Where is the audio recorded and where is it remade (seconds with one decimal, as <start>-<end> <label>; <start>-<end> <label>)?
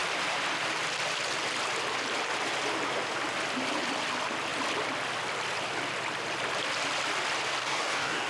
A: 0.0-7.6 recorded; 7.6-8.3 remade